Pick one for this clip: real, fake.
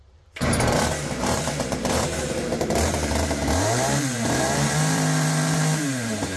fake